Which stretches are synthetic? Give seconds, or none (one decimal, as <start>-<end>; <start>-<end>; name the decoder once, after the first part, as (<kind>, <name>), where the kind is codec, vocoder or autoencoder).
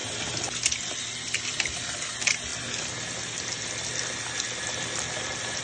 none